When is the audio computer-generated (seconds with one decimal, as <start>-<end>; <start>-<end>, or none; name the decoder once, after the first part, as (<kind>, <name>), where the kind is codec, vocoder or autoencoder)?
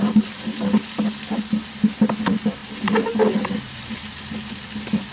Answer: none